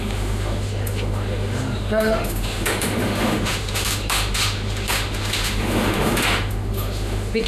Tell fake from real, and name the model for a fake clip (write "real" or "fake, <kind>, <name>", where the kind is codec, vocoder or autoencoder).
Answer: fake, autoencoder, DAC-VAE